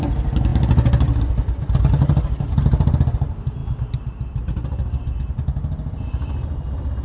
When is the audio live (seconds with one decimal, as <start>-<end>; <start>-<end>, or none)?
0.0-7.0